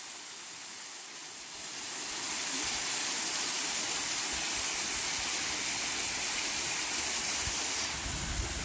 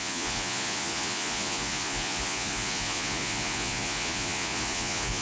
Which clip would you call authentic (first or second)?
first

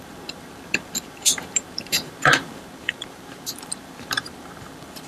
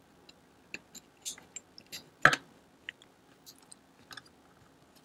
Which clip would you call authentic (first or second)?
second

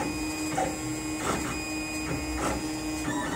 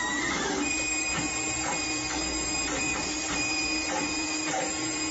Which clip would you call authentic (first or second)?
first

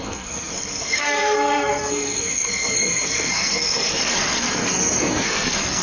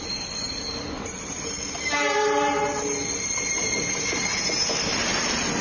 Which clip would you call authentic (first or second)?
second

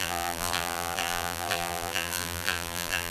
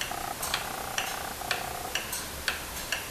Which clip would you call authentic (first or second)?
second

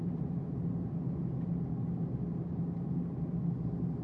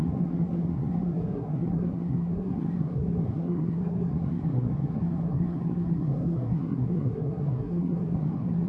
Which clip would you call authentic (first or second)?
first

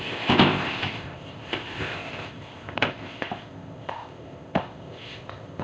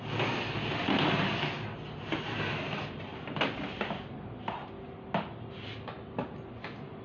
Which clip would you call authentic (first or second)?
second